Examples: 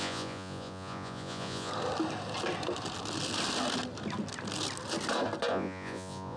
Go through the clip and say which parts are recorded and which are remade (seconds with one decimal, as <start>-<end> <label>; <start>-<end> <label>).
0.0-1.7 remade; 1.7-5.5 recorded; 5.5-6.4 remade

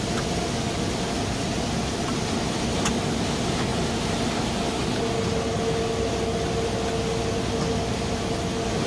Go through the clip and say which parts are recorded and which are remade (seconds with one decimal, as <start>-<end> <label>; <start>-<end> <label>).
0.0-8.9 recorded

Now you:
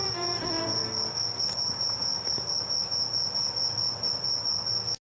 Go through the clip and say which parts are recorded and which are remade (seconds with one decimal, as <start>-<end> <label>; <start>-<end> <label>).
0.0-0.8 remade; 0.8-1.4 recorded; 1.4-2.1 remade; 2.1-5.1 recorded

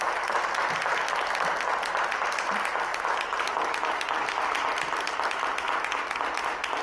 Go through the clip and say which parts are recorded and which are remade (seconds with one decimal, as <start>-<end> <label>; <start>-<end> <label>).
0.0-6.8 recorded

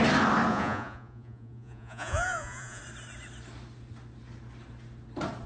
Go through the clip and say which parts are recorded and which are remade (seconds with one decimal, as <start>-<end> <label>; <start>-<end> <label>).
0.0-0.5 recorded; 0.5-2.8 remade; 2.8-5.5 recorded

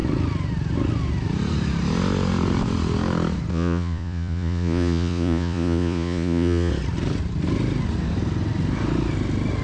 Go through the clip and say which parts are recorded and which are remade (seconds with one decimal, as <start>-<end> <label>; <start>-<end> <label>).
0.0-3.5 recorded; 3.5-6.7 remade; 6.7-9.6 recorded

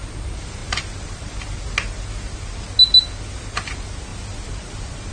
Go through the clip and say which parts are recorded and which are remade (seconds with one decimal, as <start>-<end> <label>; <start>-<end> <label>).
0.0-5.1 recorded